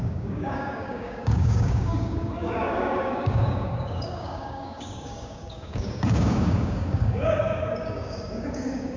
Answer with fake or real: fake